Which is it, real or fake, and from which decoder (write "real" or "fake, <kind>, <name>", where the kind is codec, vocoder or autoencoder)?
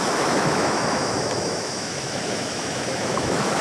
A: fake, autoencoder, DAC-VAE